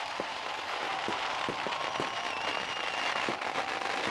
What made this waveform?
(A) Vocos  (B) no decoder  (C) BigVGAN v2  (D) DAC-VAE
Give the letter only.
B